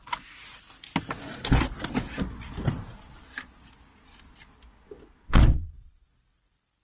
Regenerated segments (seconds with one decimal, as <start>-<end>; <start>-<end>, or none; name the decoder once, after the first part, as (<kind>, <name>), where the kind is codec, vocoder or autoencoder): 5.5-6.1 (vocoder, Vocos)

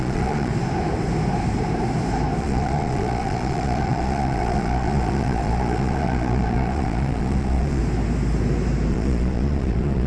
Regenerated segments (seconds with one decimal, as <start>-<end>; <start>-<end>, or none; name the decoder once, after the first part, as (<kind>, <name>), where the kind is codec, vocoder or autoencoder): 0.0-0.5 (vocoder, Vocos); 2.4-7.8; 8.9-10.1

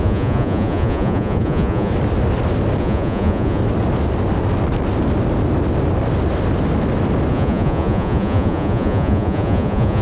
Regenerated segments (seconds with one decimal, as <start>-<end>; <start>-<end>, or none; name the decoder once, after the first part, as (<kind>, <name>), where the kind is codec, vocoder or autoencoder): 0.0-1.9 (vocoder, Vocos); 2.8-3.6; 7.3-10.0

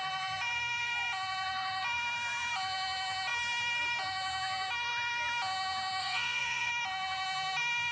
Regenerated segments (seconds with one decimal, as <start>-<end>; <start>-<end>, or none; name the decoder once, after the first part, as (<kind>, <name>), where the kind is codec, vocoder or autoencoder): 6.0-6.7 (vocoder, Vocos)

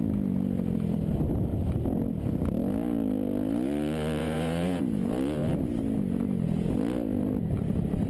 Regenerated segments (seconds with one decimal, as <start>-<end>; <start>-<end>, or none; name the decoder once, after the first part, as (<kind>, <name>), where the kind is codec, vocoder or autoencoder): 4.2-4.8 (vocoder, Vocos)